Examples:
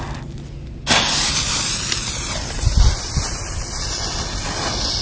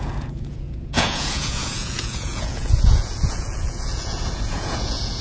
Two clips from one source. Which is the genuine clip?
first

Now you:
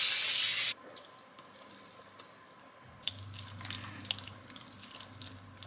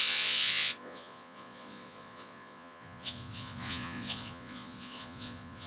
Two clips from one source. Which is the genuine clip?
first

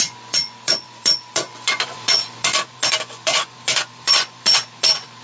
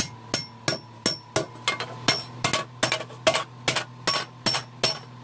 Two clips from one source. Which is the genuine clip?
second